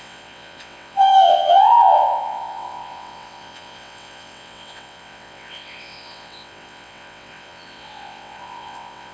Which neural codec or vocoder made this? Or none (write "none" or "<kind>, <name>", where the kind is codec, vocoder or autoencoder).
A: vocoder, WaveNeXt